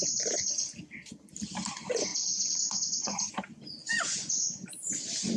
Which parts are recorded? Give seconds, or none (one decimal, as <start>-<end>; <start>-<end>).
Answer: 0.0-2.1; 3.3-3.8; 4.4-5.4